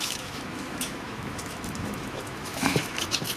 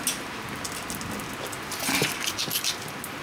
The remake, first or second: first